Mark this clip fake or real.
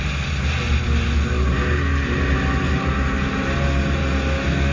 real